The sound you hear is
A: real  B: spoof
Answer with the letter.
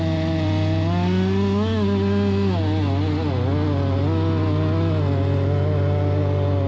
A